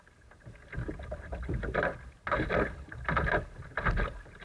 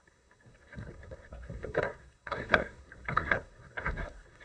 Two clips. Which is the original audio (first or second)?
first